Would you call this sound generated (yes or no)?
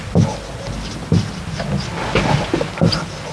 no